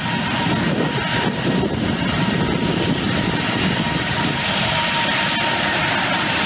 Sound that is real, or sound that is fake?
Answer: real